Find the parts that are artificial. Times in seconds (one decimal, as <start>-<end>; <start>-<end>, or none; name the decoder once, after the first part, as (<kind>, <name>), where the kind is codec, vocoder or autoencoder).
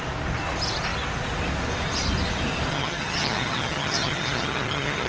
2.7-5.1 (vocoder, HiFi-GAN)